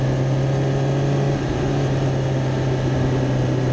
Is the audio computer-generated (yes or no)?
no